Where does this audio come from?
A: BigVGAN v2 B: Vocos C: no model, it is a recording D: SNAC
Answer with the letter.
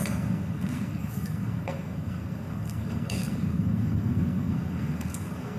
D